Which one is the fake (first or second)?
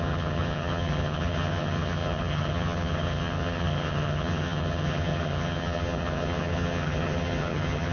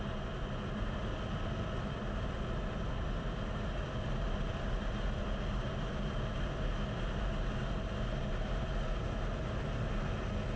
first